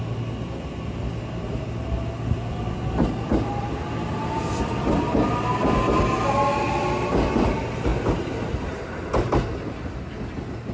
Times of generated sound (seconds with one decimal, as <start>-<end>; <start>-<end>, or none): none